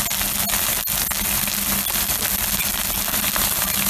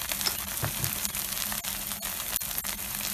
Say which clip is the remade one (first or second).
second